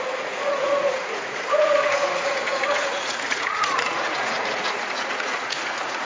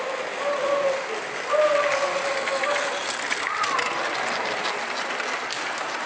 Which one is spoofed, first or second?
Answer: first